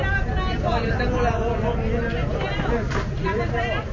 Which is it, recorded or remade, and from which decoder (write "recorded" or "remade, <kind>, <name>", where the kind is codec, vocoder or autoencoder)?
recorded